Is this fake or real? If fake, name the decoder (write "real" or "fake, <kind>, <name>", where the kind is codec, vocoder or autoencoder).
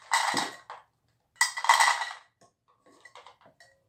real